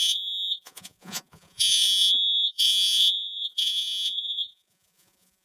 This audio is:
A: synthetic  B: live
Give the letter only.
A